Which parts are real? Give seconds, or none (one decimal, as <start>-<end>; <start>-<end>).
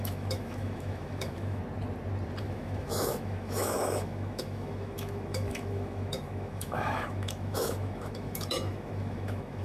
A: 1.6-2.4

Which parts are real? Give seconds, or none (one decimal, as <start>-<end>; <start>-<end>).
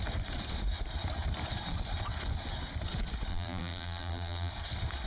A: 0.0-3.3; 4.5-5.1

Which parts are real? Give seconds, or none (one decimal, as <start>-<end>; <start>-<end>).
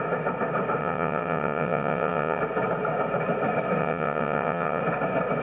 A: 0.0-0.8; 2.4-3.8; 4.8-5.4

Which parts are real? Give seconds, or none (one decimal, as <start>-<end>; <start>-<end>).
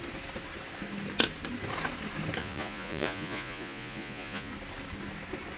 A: 0.0-2.4; 4.5-5.6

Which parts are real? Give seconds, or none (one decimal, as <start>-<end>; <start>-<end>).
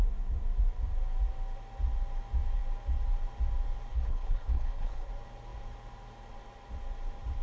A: 0.0-3.9; 5.1-7.4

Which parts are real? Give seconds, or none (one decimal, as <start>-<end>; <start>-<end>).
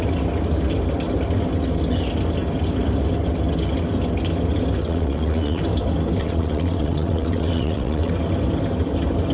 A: 0.0-4.8; 5.6-6.2; 8.1-9.3